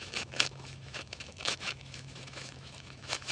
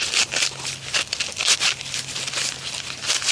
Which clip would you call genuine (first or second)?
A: second